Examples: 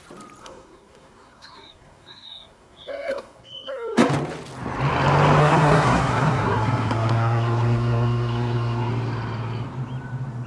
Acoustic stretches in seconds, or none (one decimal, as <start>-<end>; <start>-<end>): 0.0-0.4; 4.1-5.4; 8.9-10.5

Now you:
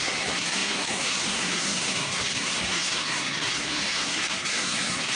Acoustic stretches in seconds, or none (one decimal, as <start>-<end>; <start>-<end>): none

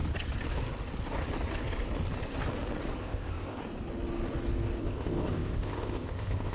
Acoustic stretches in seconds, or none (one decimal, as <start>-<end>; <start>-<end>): 0.0-3.0; 3.6-4.8

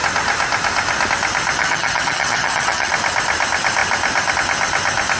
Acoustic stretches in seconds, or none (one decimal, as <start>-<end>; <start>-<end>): 0.0-1.6; 2.9-5.2